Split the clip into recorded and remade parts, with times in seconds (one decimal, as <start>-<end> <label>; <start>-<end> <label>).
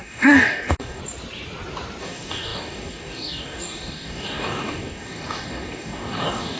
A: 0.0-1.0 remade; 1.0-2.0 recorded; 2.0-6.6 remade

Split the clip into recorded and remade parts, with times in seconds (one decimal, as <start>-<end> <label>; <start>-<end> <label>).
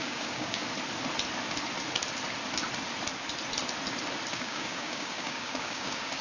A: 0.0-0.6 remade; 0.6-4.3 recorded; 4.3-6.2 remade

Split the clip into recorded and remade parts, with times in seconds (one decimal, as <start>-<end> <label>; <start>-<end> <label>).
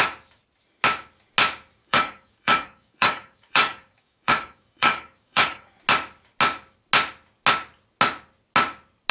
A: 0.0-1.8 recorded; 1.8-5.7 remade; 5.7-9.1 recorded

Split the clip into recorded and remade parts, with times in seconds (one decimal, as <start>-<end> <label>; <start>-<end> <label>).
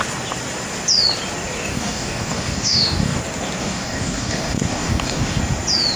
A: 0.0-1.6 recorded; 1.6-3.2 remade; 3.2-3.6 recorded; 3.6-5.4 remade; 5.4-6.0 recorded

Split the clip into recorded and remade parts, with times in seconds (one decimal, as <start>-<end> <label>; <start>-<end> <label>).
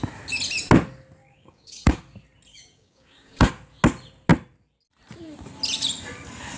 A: 0.0-1.2 recorded; 1.2-2.0 remade; 2.0-2.5 recorded; 2.5-3.5 remade; 3.5-6.6 recorded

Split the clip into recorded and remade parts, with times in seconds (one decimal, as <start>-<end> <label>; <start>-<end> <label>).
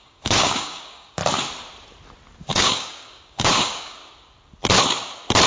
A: 0.0-1.2 remade; 1.2-2.4 recorded; 2.4-4.0 remade; 4.0-5.5 recorded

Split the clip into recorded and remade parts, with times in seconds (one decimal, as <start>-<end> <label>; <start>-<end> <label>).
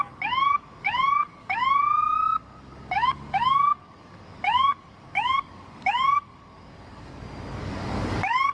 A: 0.0-7.1 remade; 7.1-7.6 recorded; 7.6-8.5 remade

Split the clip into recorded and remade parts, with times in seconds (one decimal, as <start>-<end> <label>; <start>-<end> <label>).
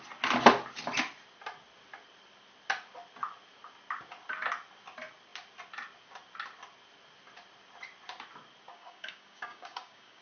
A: 0.0-8.7 recorded; 8.7-10.2 remade